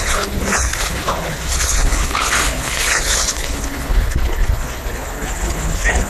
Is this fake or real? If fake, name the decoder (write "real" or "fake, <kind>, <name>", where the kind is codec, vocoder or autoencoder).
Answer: fake, codec, HILCodec